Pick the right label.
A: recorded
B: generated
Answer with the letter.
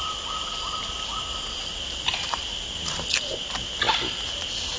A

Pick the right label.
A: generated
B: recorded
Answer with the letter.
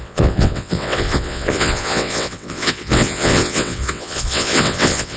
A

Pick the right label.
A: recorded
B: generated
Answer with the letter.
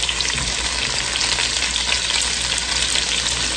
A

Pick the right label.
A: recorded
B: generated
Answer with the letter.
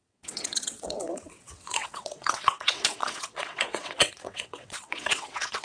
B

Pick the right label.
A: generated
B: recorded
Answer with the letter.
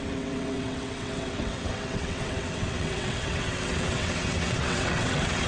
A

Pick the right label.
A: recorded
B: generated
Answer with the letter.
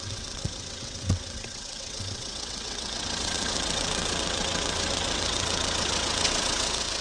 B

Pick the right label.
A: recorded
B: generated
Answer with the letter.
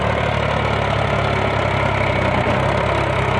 A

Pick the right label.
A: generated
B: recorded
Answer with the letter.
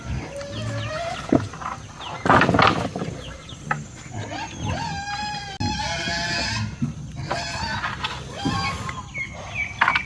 B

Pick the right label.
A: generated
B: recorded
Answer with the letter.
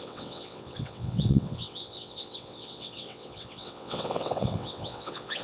A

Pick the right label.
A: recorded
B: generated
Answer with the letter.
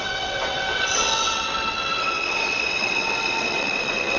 B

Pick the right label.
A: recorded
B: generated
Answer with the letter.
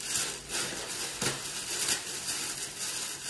A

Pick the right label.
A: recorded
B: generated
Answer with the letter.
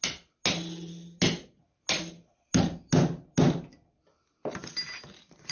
A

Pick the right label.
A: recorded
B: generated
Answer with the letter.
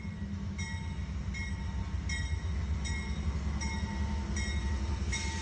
A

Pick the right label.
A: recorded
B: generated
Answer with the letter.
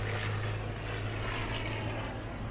A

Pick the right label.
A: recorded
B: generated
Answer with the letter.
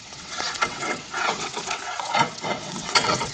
B